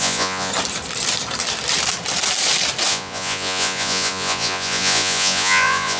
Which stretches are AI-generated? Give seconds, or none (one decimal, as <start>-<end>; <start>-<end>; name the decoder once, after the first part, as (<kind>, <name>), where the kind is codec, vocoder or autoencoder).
0.0-0.5 (vocoder, Vocos); 2.9-6.0